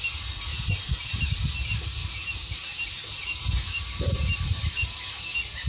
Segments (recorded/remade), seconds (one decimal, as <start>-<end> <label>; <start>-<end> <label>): 0.0-0.5 recorded; 0.5-1.4 remade; 1.4-2.0 recorded; 2.0-5.2 remade; 5.2-5.7 recorded